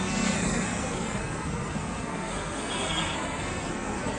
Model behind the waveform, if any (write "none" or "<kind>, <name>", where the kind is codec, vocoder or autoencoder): codec, SNAC